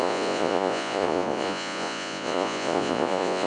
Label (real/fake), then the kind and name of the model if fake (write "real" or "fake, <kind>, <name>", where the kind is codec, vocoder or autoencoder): fake, vocoder, Vocos